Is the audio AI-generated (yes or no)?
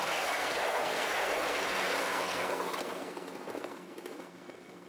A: yes